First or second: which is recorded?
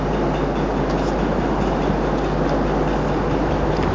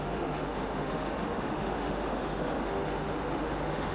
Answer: first